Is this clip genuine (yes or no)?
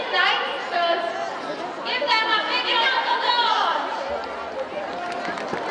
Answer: yes